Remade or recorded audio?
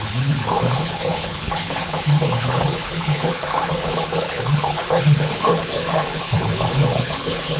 remade